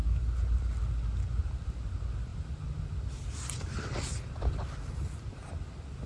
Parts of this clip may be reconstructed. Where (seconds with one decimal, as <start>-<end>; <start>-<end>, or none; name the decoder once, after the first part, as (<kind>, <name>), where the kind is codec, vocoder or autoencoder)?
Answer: none